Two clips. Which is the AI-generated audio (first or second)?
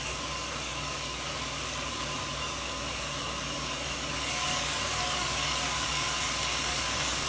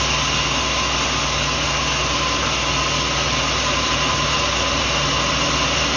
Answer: first